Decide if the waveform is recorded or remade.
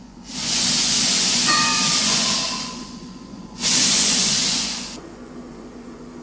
remade